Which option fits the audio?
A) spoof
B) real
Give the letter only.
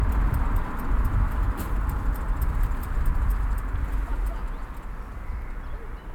B